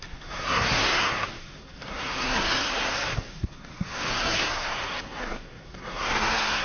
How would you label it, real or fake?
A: fake